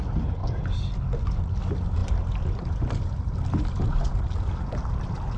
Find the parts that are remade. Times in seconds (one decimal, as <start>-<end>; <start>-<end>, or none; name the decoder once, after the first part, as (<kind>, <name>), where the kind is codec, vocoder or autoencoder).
none